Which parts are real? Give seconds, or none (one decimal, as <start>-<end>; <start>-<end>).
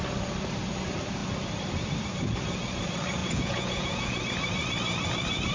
0.0-3.2; 4.2-5.5